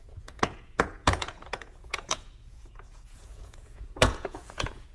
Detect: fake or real fake